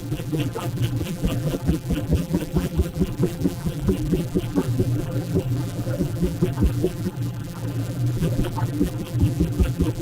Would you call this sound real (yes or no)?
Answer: no